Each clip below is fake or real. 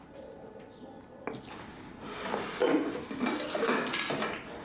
real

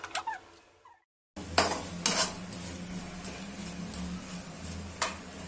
real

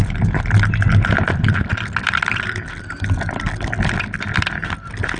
real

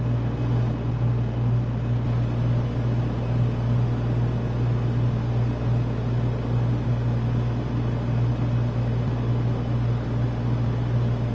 real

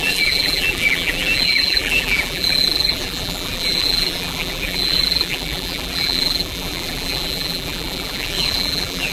fake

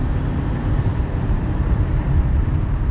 fake